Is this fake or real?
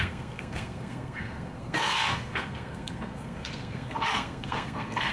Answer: fake